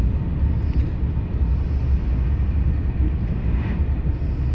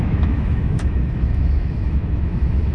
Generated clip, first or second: second